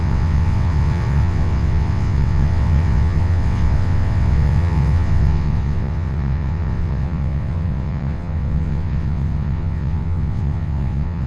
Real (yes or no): no